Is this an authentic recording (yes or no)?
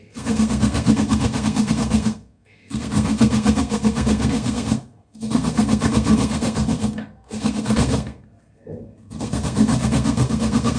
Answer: no